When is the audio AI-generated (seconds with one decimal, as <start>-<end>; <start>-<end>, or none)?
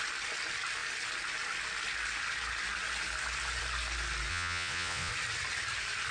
4.3-5.1